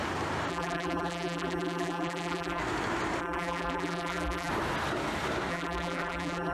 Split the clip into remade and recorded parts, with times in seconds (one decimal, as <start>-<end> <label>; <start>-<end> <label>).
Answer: 0.0-0.5 recorded; 0.5-2.6 remade; 2.6-3.2 recorded; 3.2-4.5 remade; 4.5-5.5 recorded; 5.5-6.5 remade